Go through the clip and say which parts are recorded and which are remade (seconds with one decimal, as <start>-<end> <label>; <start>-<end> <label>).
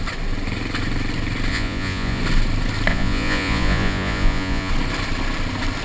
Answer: 0.0-1.5 recorded; 1.5-2.2 remade; 2.2-2.9 recorded; 2.9-4.7 remade; 4.7-5.8 recorded